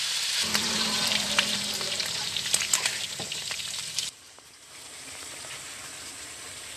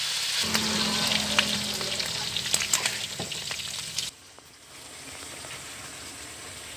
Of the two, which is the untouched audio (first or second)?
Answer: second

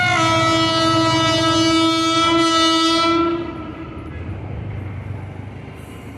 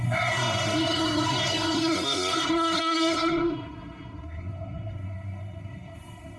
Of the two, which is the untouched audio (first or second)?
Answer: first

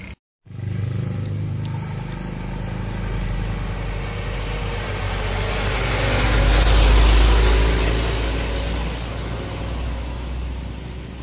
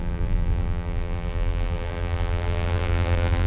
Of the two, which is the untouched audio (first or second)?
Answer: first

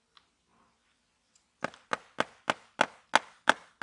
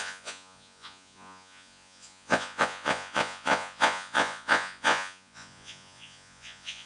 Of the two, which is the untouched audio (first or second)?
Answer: first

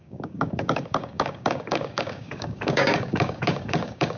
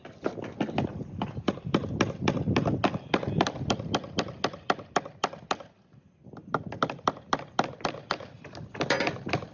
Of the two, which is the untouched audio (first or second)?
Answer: second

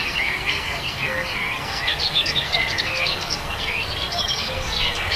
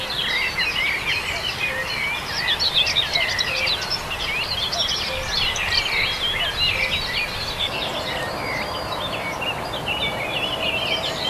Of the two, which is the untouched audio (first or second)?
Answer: second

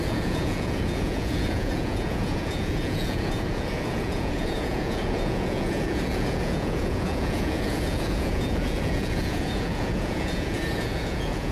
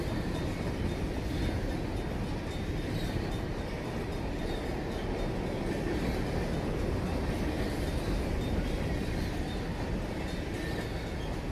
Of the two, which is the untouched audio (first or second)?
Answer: second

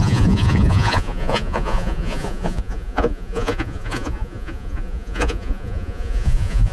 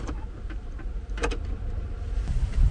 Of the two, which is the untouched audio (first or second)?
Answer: second